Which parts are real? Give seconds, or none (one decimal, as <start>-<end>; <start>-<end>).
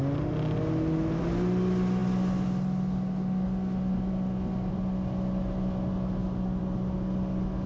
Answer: 0.0-7.7